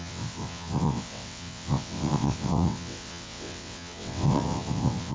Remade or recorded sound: remade